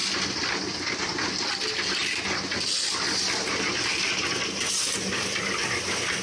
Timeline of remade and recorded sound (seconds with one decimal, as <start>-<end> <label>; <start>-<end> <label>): 0.0-6.2 recorded